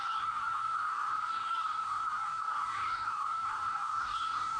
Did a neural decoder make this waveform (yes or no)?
yes